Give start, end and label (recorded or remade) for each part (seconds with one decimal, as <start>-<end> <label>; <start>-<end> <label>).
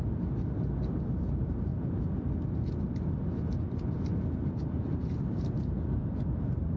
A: 0.0-1.7 remade; 1.7-4.5 recorded; 4.5-6.8 remade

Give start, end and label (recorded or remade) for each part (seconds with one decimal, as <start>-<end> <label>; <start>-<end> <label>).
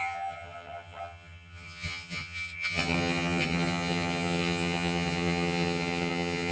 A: 0.0-6.5 remade